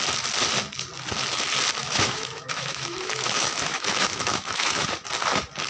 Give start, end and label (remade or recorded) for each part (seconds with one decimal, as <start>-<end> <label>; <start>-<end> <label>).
0.0-1.8 recorded; 1.8-4.9 remade; 4.9-5.7 recorded